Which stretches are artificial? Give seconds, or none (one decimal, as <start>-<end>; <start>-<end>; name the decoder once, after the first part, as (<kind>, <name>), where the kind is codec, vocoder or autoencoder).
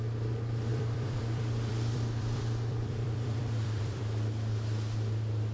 0.7-4.0 (vocoder, BigVGAN v2)